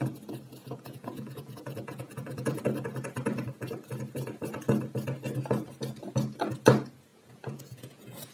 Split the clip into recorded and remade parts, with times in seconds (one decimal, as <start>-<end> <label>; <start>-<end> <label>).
0.0-0.6 recorded; 0.6-2.6 remade; 2.6-7.1 recorded; 7.1-8.3 remade

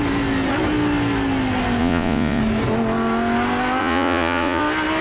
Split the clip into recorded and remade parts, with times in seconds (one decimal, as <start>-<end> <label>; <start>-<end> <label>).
0.0-1.8 recorded; 1.8-2.4 remade; 2.4-3.8 recorded; 3.8-4.6 remade; 4.6-5.0 recorded

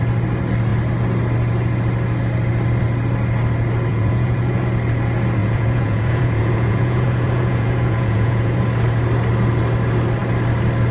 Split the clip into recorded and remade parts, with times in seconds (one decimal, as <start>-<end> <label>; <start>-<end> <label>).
0.0-3.9 recorded; 3.9-4.7 remade; 4.7-5.4 recorded; 5.4-8.6 remade; 8.6-10.9 recorded